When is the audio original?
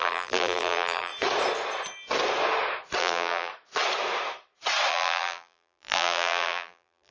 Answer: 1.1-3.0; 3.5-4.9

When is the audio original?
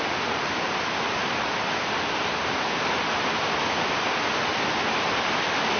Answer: 0.0-1.2; 4.7-5.8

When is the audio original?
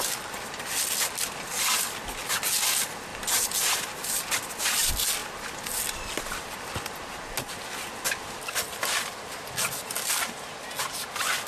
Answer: 0.0-3.1; 3.8-11.5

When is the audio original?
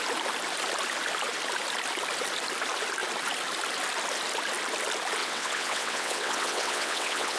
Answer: 0.0-5.2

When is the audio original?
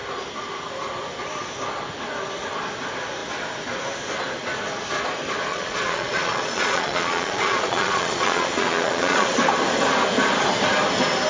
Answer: 0.0-5.5; 9.4-11.3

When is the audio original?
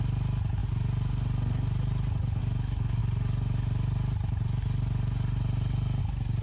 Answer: 0.0-6.4